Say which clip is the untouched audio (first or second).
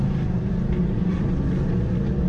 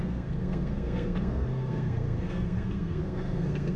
first